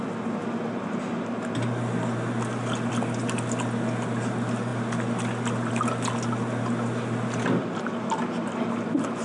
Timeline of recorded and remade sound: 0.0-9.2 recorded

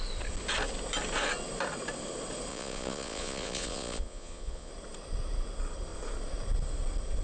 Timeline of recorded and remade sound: 0.0-2.5 recorded; 2.5-4.7 remade; 4.7-7.2 recorded

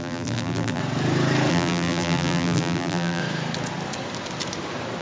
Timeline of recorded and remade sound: 0.0-0.8 remade; 0.8-1.5 recorded; 1.5-3.2 remade; 3.2-5.0 recorded

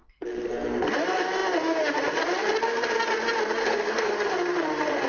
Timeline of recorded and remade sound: 0.0-0.5 remade; 0.5-3.6 recorded; 3.6-4.1 remade; 4.1-5.1 recorded

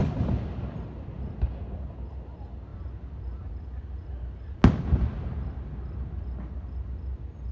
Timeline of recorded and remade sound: 0.0-7.5 recorded

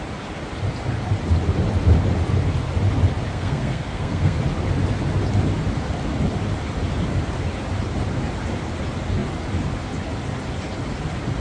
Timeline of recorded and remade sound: 0.0-3.3 recorded; 3.3-4.4 remade; 4.4-11.4 recorded

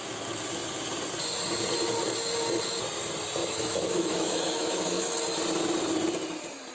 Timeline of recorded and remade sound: 0.0-3.4 recorded; 3.4-5.1 remade; 5.1-6.7 recorded

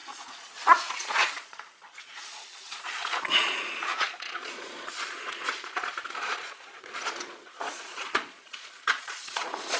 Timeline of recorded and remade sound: 0.0-9.8 remade